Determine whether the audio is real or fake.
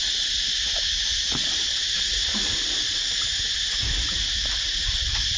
real